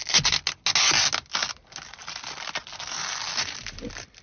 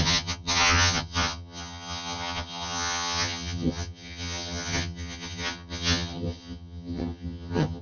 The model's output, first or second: second